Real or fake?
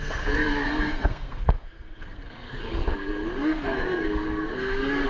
fake